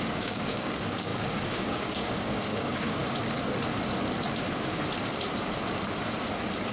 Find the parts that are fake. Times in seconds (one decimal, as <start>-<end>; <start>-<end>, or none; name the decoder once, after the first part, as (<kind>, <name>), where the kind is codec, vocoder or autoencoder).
0.0-3.0 (codec, DAC)

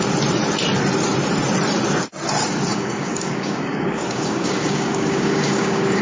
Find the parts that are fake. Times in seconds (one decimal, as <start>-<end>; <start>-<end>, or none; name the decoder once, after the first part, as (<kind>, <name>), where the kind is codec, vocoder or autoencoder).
2.7-6.0 (codec, DAC)